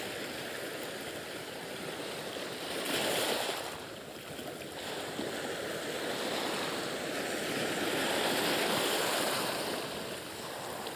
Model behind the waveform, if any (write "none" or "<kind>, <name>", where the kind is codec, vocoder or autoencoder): none